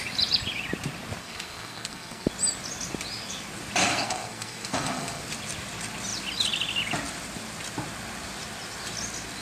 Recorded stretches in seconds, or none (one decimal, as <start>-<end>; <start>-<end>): 0.0-1.2; 2.3-3.8; 5.2-9.4